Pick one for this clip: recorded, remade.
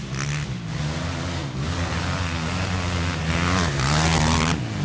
recorded